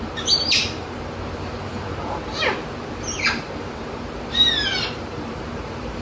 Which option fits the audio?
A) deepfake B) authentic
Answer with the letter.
A